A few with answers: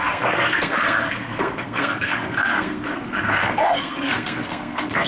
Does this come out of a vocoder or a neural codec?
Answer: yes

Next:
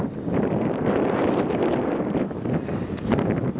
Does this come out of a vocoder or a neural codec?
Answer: no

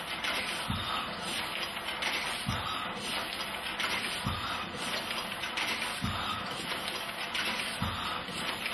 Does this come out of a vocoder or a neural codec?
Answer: no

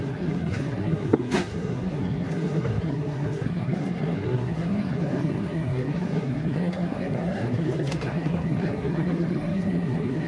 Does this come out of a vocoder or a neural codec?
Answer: yes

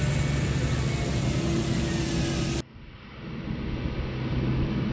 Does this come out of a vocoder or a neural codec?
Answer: no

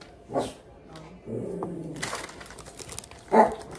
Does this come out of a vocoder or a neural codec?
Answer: no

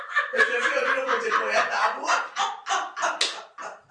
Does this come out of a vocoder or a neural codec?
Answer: no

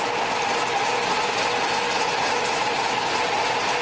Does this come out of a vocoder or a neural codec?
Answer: no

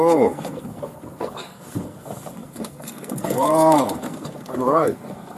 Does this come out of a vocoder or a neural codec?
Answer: yes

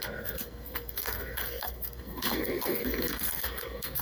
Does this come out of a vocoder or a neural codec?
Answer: yes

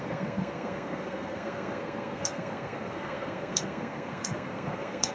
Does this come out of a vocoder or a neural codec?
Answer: yes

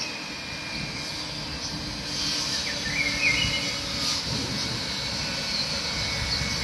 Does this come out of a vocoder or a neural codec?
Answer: no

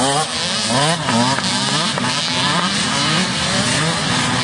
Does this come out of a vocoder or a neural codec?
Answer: no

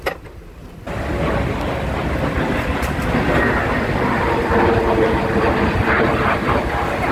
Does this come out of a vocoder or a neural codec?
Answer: no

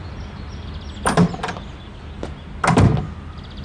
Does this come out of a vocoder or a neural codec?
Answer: no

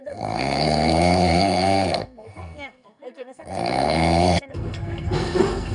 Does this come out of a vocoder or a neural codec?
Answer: yes